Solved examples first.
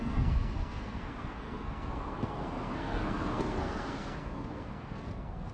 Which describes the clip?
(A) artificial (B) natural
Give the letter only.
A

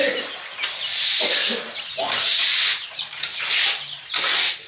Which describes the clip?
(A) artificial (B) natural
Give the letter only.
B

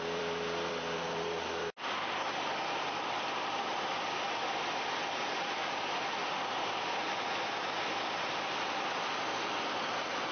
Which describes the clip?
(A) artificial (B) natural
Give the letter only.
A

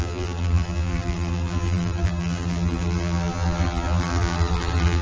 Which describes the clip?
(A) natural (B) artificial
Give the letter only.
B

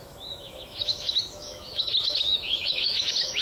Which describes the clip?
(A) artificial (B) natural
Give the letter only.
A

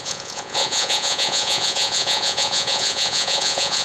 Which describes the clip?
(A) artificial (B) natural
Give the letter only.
A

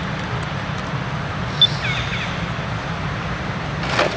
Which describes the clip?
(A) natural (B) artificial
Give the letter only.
A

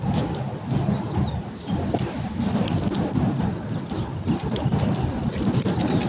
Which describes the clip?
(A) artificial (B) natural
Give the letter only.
B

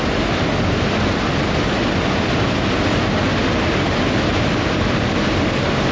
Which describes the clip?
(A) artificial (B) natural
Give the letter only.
B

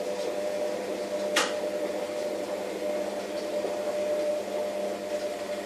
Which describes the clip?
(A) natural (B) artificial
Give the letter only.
A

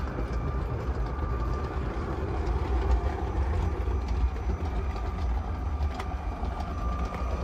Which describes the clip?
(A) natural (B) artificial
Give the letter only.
A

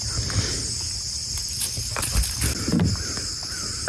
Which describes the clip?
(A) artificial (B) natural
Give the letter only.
B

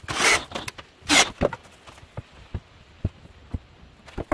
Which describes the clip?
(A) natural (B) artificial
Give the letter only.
A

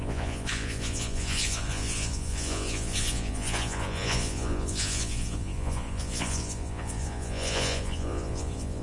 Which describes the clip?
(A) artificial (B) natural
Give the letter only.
A